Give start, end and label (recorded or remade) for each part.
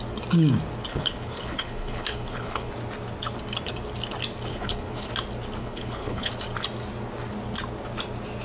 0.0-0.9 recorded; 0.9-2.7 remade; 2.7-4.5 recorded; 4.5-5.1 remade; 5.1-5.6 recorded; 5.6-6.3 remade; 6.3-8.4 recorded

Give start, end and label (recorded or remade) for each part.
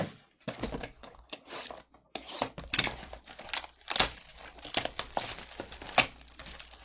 0.0-1.0 recorded; 1.0-1.5 remade; 1.5-6.8 recorded